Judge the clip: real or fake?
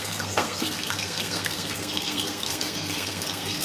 fake